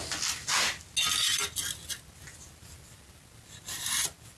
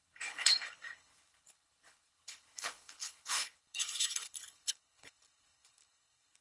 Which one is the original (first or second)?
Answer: first